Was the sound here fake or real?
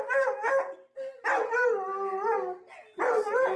real